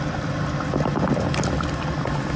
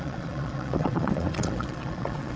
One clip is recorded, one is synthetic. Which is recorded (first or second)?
first